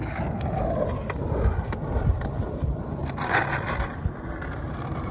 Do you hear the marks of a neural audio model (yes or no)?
no